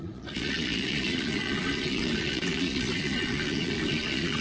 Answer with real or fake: fake